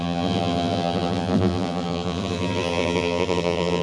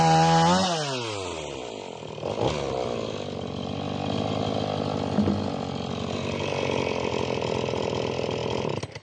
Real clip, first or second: second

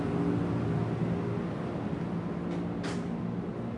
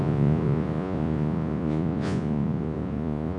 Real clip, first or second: first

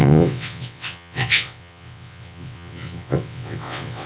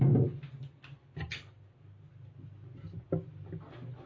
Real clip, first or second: second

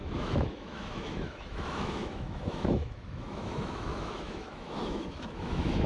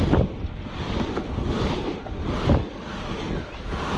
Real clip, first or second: second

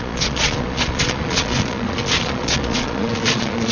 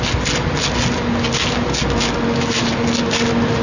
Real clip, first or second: second